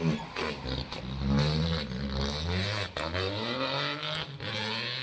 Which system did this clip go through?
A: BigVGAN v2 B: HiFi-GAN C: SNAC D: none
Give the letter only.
D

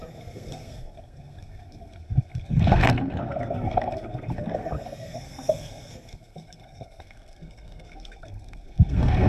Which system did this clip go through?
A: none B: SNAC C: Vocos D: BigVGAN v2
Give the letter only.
B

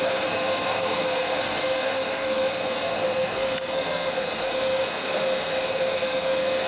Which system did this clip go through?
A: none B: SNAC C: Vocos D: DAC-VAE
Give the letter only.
B